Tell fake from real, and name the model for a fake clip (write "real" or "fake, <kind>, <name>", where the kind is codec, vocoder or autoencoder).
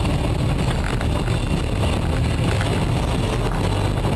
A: real